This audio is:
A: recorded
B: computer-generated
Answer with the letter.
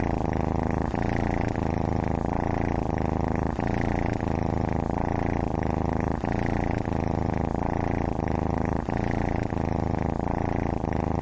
A